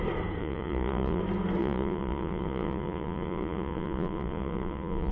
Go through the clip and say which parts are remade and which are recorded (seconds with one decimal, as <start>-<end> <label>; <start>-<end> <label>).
0.0-0.4 recorded; 0.4-1.2 remade; 1.2-1.6 recorded; 1.6-5.1 remade